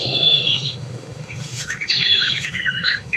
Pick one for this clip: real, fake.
fake